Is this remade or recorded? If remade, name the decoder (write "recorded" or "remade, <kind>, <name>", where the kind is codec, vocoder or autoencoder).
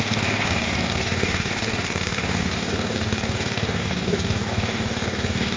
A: remade, codec, DAC